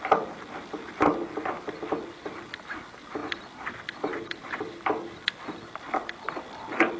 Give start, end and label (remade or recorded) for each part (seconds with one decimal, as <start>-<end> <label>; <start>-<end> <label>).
0.0-7.0 recorded